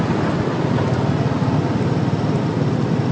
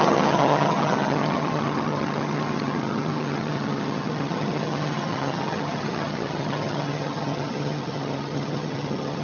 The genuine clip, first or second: first